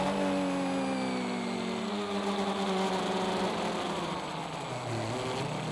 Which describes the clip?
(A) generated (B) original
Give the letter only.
B